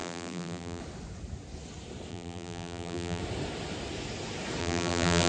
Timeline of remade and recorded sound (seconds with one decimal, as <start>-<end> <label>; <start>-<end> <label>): 0.0-0.8 remade; 0.8-2.1 recorded; 2.1-3.2 remade; 3.2-4.6 recorded; 4.6-5.3 remade